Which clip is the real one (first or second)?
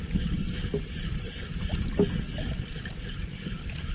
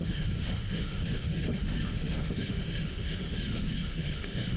first